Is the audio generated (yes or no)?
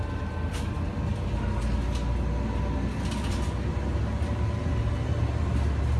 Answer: no